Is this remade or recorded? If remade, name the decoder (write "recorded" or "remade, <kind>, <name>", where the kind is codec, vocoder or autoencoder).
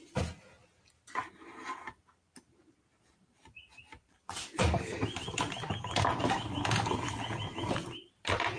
recorded